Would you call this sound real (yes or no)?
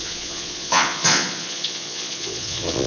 no